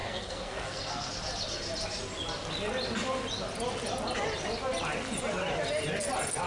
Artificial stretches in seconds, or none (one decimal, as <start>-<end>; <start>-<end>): 0.0-1.1